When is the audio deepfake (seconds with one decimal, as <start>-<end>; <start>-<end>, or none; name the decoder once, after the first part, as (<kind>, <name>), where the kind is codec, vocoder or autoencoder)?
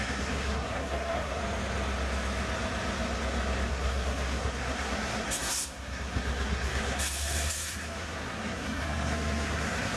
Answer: 0.0-1.4 (codec, SNAC); 3.7-10.0